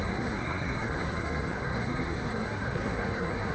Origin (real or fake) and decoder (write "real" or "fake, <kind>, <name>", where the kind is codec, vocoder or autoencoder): fake, codec, SNAC